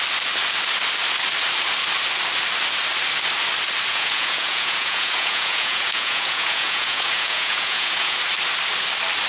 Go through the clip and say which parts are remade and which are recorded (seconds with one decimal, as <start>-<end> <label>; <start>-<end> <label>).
0.0-3.9 recorded; 3.9-8.2 remade; 8.2-9.3 recorded